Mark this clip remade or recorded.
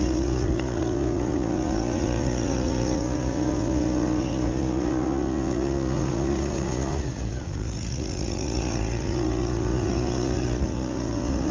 remade